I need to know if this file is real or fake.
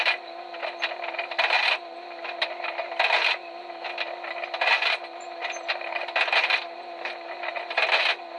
real